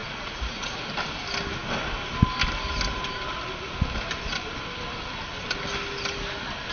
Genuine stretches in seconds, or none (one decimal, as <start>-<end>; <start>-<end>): 0.9-6.7